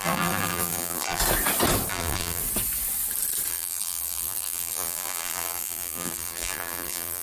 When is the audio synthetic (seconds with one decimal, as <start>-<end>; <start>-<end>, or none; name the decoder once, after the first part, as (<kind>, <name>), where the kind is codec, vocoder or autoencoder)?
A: 0.0-1.2 (vocoder, BigVGAN v2); 1.9-2.4; 3.5-7.2

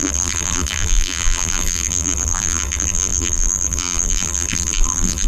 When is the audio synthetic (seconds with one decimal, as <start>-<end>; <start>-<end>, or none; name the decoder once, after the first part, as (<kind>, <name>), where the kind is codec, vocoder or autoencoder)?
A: 0.0-5.3 (vocoder, BigVGAN v2)

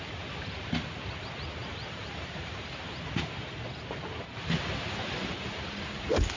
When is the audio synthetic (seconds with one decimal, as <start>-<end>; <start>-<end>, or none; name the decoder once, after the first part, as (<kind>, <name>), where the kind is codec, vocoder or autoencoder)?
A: 1.6-2.7 (vocoder, BigVGAN v2)

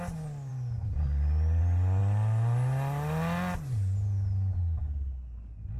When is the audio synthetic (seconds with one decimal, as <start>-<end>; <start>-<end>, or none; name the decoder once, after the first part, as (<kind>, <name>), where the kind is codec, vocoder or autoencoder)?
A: none

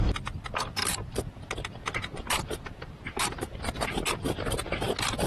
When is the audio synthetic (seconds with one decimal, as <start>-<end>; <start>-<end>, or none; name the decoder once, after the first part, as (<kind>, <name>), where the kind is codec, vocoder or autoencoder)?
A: 0.8-3.6 (vocoder, BigVGAN v2)

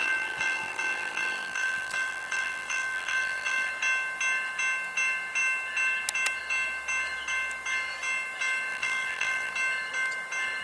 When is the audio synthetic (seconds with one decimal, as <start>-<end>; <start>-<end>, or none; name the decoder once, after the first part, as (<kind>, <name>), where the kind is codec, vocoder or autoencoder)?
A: 0.0-3.7 (vocoder, BigVGAN v2); 8.7-9.5